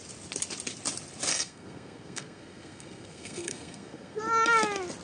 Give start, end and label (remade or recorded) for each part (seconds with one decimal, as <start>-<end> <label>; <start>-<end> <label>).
0.0-1.3 recorded; 1.3-4.2 remade; 4.2-5.0 recorded